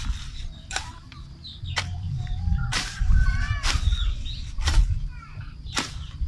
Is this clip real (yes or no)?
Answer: no